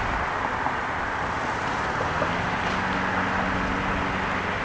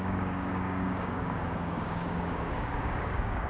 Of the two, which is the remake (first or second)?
second